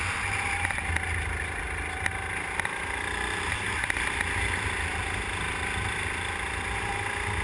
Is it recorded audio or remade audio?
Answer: recorded